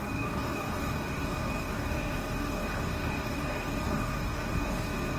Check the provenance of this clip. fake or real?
fake